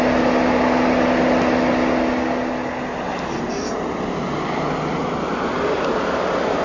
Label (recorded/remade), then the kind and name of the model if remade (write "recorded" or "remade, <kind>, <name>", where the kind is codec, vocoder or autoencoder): recorded